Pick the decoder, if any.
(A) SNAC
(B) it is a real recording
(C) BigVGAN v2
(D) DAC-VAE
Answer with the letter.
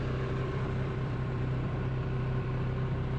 C